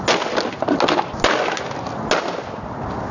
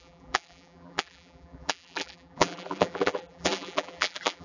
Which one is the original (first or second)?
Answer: first